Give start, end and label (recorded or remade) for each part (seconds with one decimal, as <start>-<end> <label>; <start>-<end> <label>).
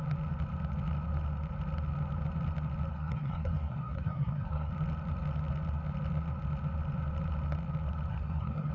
0.0-2.9 recorded; 2.9-4.7 remade; 4.7-8.1 recorded; 8.1-8.7 remade